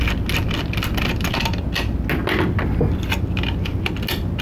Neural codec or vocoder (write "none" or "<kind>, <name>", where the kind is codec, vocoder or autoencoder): none